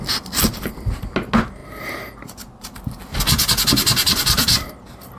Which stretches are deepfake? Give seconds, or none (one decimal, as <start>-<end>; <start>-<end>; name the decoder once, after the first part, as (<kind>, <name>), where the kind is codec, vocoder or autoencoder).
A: none